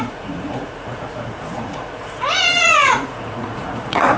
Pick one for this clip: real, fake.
fake